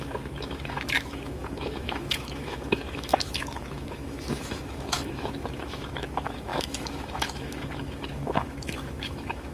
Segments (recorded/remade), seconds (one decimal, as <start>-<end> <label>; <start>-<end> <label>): 0.0-9.5 remade